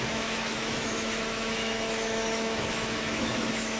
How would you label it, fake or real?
fake